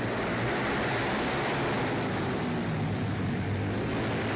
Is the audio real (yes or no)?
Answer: yes